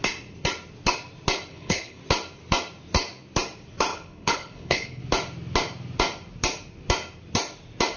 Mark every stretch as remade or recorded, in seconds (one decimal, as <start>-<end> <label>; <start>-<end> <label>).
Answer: 0.0-1.5 recorded; 1.5-2.0 remade; 2.0-3.9 recorded; 3.9-5.0 remade; 5.0-8.0 recorded